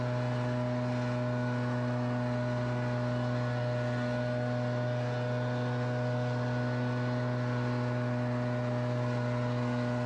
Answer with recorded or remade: recorded